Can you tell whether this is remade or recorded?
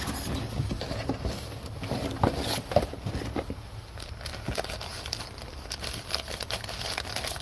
recorded